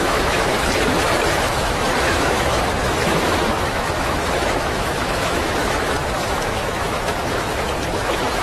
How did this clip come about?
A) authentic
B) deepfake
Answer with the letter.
B